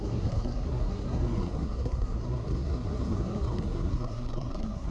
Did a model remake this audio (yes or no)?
yes